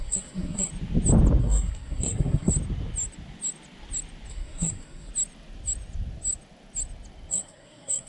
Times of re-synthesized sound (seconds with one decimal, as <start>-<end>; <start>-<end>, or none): 0.0-0.7; 1.4-2.5; 4.3-5.1; 7.3-8.1